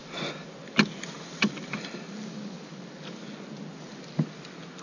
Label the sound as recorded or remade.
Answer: recorded